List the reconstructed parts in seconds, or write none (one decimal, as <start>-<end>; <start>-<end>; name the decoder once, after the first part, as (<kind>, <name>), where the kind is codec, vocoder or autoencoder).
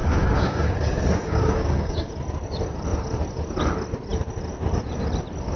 0.0-2.1 (codec, DAC)